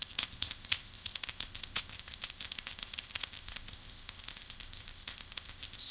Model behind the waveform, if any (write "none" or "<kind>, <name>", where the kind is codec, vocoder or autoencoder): codec, ZipCodec